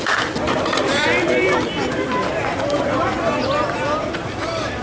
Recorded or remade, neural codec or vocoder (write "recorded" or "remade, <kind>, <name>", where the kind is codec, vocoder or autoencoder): remade, vocoder, BigVGAN v2